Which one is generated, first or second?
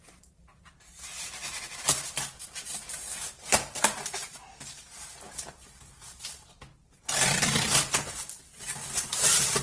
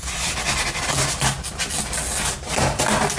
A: first